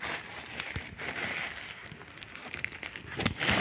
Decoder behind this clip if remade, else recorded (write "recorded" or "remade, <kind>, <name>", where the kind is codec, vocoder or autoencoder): recorded